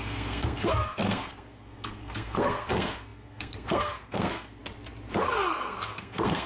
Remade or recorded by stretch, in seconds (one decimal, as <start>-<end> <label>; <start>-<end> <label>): 0.0-4.6 remade; 4.6-5.2 recorded; 5.2-6.5 remade